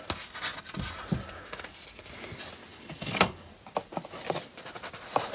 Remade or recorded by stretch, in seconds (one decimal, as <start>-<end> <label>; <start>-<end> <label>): 0.0-2.7 recorded; 2.7-3.5 remade; 3.5-5.3 recorded